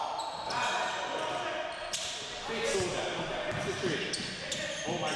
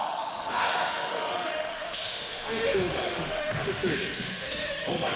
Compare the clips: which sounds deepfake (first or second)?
second